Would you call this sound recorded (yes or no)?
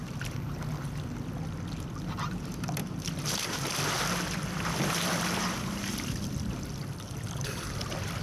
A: no